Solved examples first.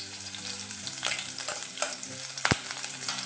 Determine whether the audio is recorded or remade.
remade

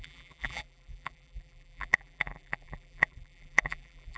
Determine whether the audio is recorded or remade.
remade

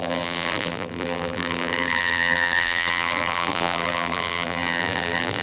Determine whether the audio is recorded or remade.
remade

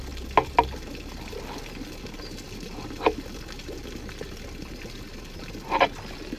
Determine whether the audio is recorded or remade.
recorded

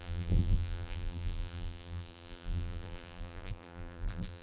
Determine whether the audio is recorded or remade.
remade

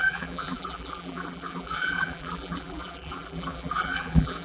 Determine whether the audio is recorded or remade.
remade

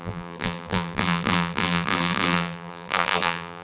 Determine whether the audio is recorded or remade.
remade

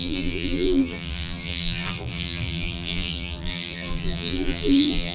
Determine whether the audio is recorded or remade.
remade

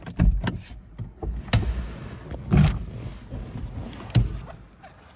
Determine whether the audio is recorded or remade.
recorded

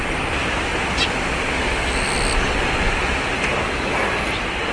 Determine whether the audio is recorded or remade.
recorded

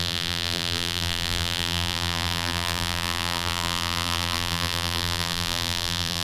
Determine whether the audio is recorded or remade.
remade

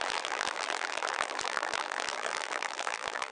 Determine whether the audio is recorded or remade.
remade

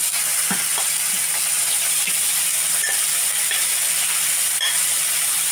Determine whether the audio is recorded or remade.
remade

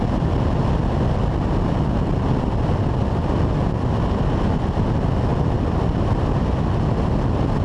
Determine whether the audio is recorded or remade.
recorded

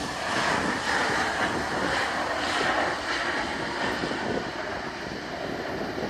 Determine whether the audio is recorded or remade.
recorded